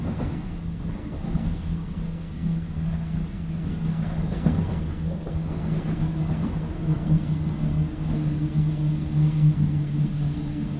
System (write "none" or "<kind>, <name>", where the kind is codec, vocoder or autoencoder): codec, SNAC